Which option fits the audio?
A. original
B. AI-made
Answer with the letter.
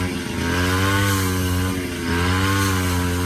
A